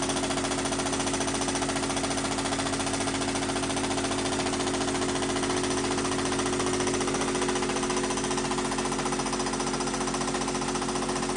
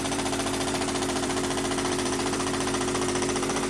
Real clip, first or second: first